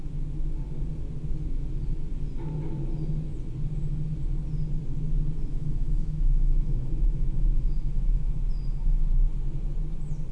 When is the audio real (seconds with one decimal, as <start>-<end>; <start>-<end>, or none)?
0.0-5.5; 8.3-10.3